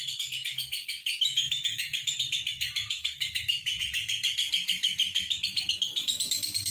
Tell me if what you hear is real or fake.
fake